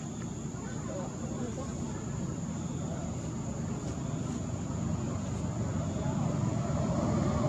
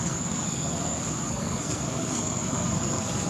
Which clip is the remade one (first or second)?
second